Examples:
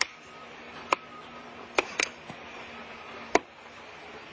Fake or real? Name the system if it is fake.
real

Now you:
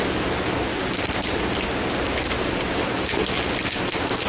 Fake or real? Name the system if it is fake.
real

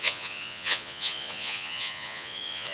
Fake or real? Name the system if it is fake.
fake, vocoder, Vocos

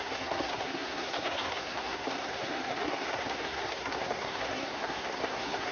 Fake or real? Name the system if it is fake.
fake, codec, SNAC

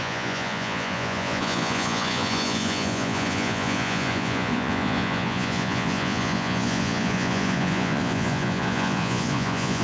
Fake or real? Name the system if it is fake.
fake, vocoder, Vocos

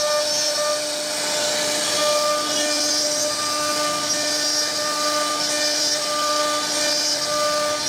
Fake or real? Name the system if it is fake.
real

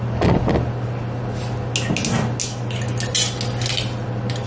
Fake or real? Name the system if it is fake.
real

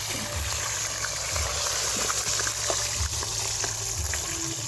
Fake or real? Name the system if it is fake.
real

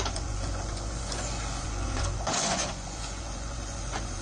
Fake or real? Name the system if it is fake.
fake, vocoder, Vocos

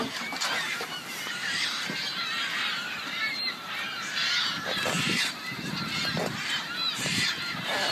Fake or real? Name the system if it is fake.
fake, vocoder, BigVGAN v2